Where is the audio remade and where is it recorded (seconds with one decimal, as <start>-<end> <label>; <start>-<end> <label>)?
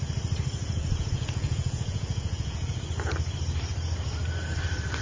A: 0.0-0.6 recorded; 0.6-2.8 remade; 2.8-5.0 recorded